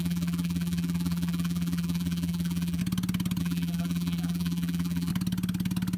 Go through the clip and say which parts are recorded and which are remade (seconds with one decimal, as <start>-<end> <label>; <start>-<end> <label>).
0.0-2.8 remade; 2.8-3.4 recorded; 3.4-5.1 remade; 5.1-6.0 recorded